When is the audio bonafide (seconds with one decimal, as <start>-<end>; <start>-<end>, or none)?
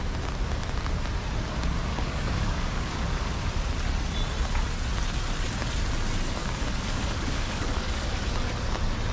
0.0-1.9; 3.3-6.4; 8.2-9.1